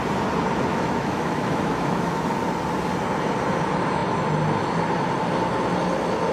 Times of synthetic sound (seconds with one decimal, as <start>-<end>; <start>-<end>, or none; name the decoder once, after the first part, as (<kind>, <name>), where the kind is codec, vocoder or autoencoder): 0.7-2.2 (autoencoder, DAC-VAE)